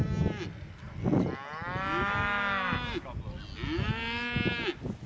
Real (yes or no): yes